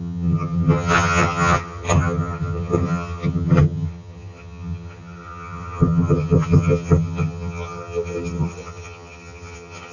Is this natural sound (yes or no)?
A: no